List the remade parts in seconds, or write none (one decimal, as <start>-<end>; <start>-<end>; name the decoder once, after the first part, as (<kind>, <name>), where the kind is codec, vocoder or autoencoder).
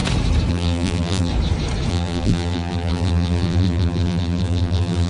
0.5-1.3 (vocoder, BigVGAN v2); 1.9-5.1